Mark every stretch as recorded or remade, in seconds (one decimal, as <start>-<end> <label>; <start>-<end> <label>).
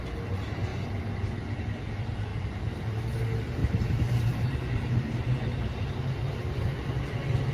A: 0.0-2.3 recorded; 2.3-2.8 remade; 2.8-3.6 recorded; 3.6-5.4 remade; 5.4-7.5 recorded